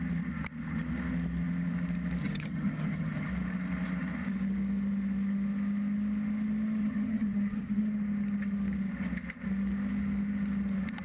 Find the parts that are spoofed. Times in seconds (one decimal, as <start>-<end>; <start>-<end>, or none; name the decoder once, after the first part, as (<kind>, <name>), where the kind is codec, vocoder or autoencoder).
2.2-3.3 (vocoder, HiFi-GAN); 6.8-7.8